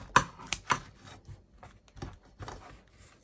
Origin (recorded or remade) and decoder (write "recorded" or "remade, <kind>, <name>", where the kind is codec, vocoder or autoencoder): recorded